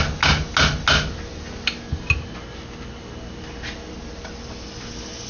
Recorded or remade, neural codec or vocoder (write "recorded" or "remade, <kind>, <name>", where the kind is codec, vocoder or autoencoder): recorded